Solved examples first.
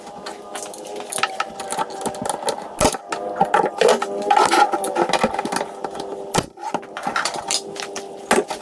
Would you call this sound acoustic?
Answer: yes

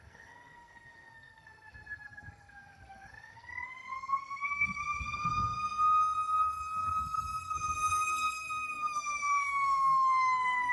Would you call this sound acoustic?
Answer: no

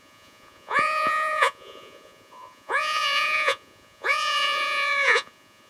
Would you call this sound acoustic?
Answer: no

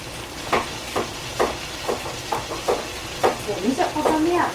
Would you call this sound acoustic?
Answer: no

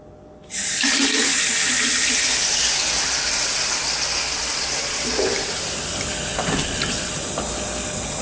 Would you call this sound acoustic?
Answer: yes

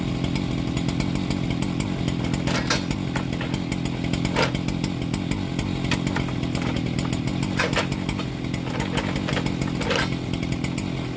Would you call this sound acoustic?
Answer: yes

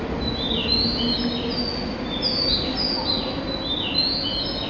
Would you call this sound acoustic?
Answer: yes